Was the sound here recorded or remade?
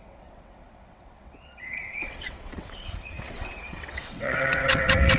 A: remade